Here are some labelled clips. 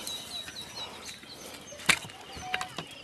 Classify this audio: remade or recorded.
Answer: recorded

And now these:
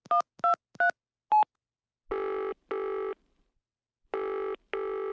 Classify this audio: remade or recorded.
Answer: recorded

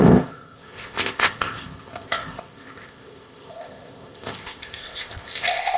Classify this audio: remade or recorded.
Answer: remade